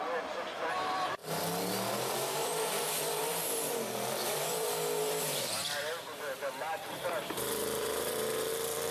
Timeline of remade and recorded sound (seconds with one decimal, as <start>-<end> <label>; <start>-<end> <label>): 0.0-1.2 remade; 1.2-2.0 recorded; 2.0-8.9 remade